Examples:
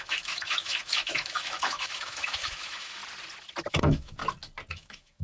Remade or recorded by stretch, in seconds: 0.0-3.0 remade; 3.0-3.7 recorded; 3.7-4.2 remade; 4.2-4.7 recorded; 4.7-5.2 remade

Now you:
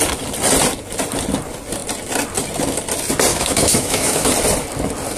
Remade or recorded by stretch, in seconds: 0.0-3.3 recorded; 3.3-4.3 remade; 4.3-5.2 recorded

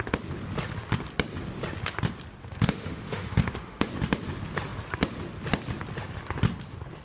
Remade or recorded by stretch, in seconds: 0.0-2.4 recorded; 2.4-3.9 remade; 3.9-7.0 recorded

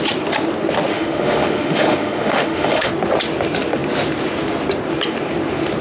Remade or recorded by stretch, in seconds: 0.0-0.9 recorded; 0.9-2.9 remade; 2.9-5.8 recorded